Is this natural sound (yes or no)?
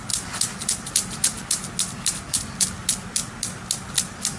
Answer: yes